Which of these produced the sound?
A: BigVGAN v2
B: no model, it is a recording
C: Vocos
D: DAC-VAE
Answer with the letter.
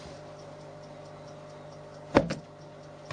B